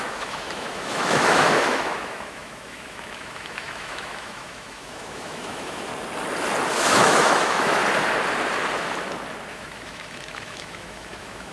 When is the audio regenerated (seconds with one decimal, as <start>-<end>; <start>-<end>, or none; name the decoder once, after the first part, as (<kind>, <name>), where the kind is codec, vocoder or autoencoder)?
0.0-5.9 (autoencoder, DAC-VAE); 6.7-7.8; 9.5-11.5